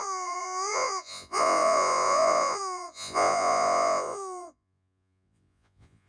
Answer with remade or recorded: remade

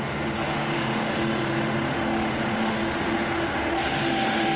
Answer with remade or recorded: remade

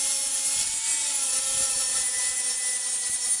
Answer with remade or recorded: recorded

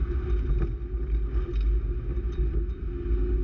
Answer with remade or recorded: recorded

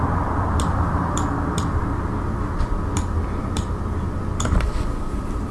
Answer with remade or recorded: recorded